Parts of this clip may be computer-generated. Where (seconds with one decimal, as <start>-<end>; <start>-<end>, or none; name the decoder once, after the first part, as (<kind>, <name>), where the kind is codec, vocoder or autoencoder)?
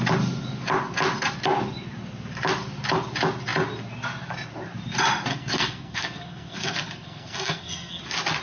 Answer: 5.3-8.0 (codec, SNAC)